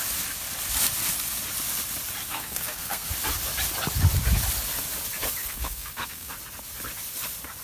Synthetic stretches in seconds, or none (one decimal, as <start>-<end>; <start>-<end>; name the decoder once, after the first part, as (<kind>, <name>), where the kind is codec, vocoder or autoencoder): 2.3-3.1 (codec, SNAC); 5.4-6.3